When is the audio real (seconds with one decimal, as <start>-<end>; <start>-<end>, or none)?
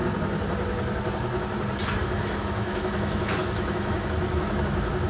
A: 0.0-2.0